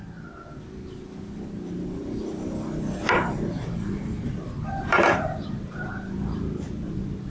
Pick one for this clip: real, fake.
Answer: real